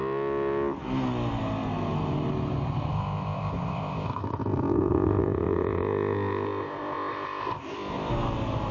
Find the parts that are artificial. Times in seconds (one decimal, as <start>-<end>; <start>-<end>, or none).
2.9-8.1

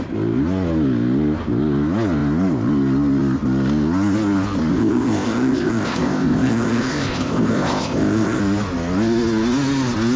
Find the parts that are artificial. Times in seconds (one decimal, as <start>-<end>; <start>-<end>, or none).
4.7-8.4

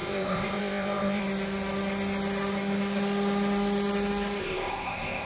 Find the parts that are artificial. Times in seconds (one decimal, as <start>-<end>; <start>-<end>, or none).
0.0-1.2; 4.4-5.3

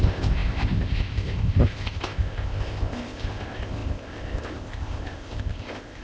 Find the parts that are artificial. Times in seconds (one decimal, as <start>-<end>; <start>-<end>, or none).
0.0-6.0

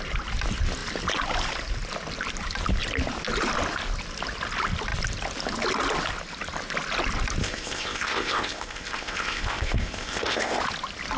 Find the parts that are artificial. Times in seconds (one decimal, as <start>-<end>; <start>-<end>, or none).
7.4-10.6

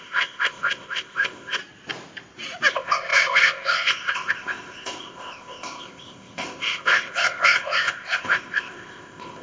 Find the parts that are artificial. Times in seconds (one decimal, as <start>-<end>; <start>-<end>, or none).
0.0-1.6; 2.7-9.4

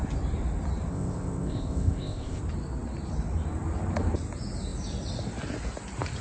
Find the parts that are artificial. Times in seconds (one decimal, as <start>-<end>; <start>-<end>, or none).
0.9-2.4

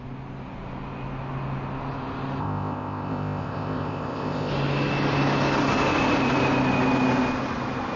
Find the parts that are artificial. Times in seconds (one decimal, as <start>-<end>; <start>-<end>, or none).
2.4-4.5